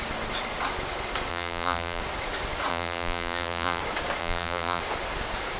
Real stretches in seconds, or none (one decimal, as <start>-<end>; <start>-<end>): 0.0-1.3; 2.0-2.7; 3.8-4.2; 4.8-5.6